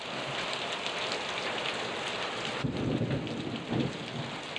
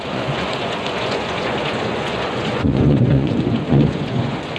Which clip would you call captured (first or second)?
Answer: first